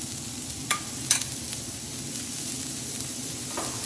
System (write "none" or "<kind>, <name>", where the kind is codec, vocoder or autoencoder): vocoder, BigVGAN v2